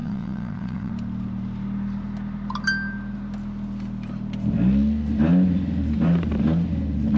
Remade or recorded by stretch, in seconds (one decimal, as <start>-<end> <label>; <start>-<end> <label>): 0.0-0.9 remade; 0.9-7.2 recorded